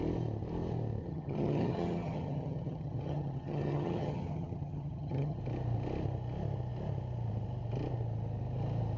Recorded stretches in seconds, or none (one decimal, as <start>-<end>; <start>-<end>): 0.0-1.0; 5.4-9.0